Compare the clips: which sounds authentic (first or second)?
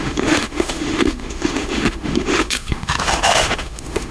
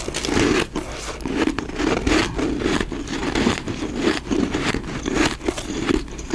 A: second